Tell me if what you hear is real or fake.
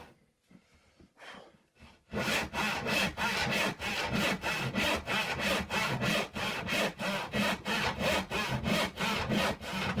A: real